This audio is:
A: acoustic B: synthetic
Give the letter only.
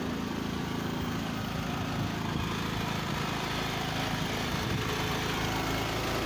A